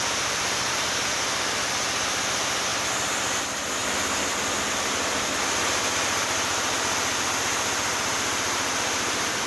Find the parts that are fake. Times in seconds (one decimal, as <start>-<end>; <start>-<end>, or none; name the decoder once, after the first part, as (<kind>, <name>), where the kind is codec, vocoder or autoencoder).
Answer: none